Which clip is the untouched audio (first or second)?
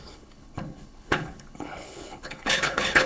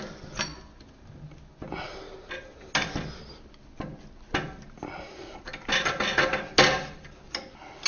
second